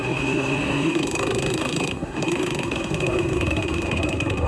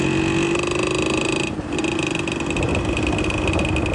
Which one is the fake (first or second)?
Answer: first